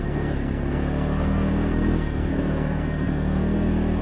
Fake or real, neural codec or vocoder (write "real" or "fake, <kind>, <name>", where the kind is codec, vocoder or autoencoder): fake, codec, SNAC